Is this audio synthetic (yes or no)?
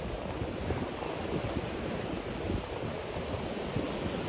no